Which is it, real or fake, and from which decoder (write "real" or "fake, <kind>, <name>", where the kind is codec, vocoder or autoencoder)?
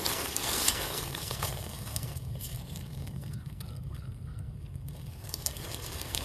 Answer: fake, codec, SNAC